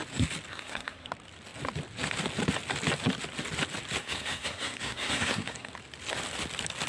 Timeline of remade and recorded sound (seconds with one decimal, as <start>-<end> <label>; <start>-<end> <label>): 0.0-0.5 recorded; 0.5-1.1 remade; 1.1-4.0 recorded; 4.0-5.7 remade; 5.7-6.9 recorded